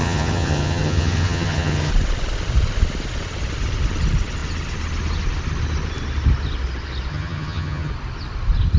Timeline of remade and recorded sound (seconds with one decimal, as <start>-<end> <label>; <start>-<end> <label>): 0.0-1.9 remade; 1.9-7.1 recorded; 7.1-7.9 remade; 7.9-8.8 recorded